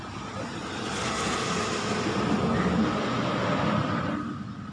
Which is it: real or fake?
real